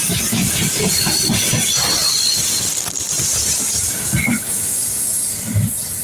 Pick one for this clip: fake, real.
fake